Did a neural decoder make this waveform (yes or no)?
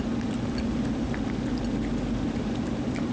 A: no